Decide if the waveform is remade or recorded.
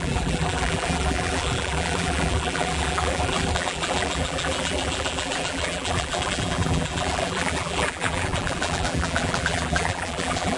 remade